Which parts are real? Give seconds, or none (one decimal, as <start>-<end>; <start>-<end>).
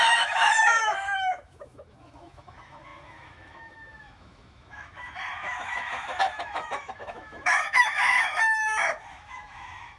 none